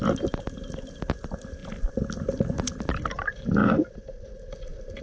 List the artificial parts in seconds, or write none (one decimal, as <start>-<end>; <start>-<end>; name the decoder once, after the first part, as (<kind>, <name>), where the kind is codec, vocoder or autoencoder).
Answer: none